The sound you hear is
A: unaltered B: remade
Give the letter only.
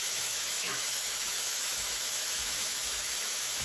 B